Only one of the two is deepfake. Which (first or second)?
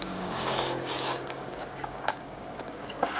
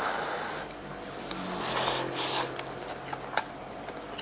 first